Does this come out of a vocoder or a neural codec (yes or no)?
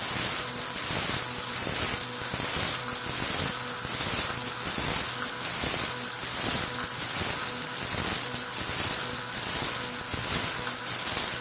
no